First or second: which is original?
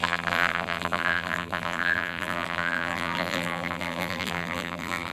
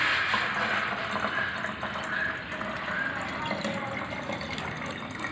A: second